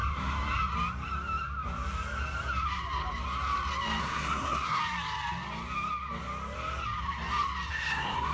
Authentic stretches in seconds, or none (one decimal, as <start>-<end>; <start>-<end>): 0.0-4.0; 4.8-7.7